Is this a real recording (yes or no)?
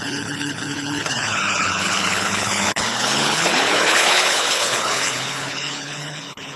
no